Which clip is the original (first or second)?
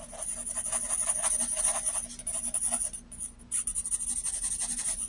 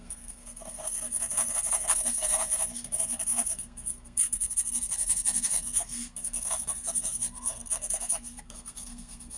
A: first